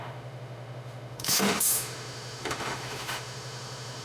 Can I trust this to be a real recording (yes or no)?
no